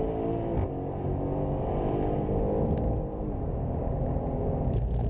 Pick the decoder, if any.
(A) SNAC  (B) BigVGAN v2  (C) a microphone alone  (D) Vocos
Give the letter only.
C